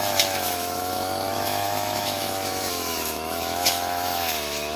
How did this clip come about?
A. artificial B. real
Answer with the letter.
A